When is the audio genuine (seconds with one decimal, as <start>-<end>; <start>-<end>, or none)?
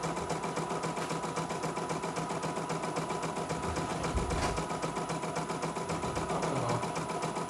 0.0-7.5